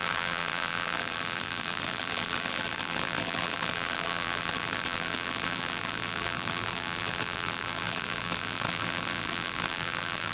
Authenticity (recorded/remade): remade